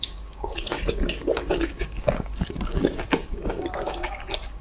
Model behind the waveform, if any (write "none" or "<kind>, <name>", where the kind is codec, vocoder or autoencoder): codec, DAC